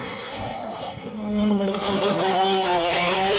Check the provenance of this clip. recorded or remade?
remade